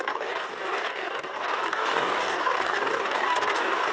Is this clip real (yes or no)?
no